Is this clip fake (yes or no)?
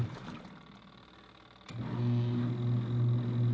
yes